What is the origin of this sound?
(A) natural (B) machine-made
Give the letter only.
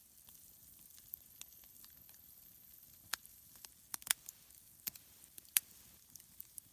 A